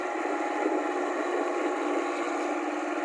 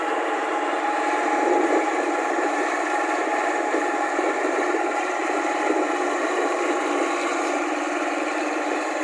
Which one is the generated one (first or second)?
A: second